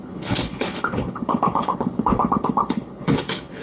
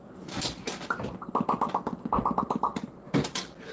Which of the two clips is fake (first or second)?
first